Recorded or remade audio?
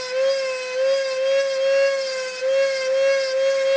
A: recorded